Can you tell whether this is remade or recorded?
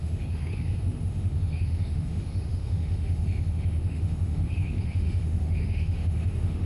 remade